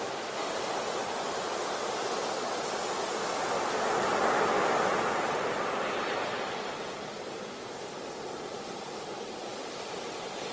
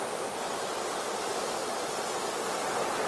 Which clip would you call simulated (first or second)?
first